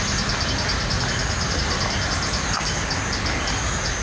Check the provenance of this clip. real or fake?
real